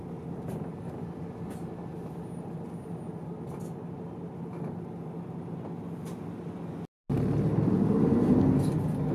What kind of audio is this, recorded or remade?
recorded